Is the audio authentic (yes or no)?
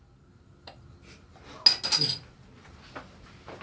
yes